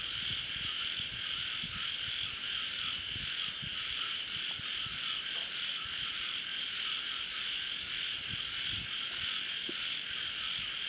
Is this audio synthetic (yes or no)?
no